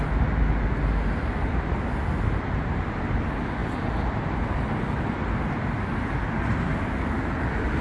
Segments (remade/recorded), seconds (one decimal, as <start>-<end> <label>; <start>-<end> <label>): 0.0-7.8 recorded